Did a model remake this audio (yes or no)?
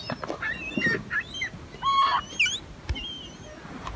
no